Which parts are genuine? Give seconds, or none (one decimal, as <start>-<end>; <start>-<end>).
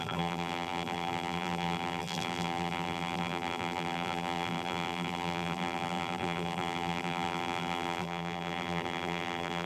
none